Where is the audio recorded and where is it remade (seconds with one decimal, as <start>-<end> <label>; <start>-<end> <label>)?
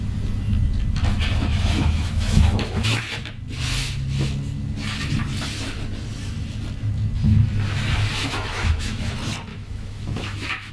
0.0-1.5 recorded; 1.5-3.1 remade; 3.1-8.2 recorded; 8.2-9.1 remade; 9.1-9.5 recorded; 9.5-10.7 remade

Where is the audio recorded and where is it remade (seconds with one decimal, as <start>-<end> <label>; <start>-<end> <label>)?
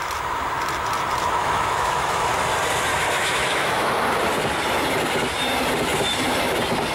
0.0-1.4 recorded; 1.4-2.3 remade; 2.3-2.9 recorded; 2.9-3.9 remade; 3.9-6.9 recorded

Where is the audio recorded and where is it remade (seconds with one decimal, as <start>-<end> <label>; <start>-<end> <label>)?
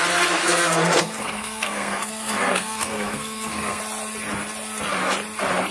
0.0-0.4 recorded; 0.4-3.8 remade; 3.8-5.7 recorded